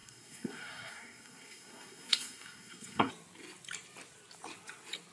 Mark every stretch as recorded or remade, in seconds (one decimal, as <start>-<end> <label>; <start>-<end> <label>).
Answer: 0.0-3.1 remade; 3.1-5.1 recorded